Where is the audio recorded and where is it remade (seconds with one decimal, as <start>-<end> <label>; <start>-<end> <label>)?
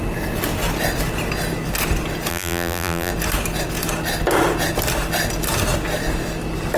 0.0-2.3 recorded; 2.3-3.1 remade; 3.1-6.8 recorded